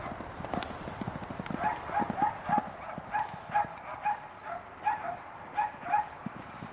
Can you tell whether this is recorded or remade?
recorded